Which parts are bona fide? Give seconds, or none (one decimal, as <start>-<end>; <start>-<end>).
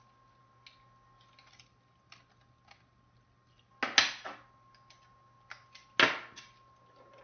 0.0-7.2